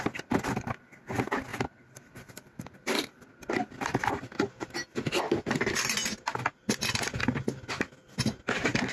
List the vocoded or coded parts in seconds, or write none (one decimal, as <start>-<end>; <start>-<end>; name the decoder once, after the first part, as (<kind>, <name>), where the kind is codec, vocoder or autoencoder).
1.5-3.0 (vocoder, BigVGAN v2); 8.0-8.5